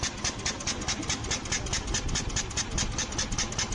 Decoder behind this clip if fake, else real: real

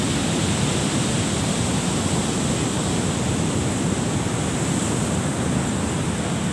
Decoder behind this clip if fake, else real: real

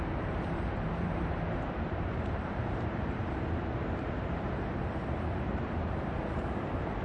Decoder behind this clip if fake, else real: fake, vocoder, BigVGAN v2